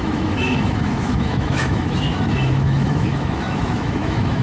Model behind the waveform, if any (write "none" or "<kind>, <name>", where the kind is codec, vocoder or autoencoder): autoencoder, DAC-VAE